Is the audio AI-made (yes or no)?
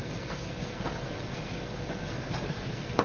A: yes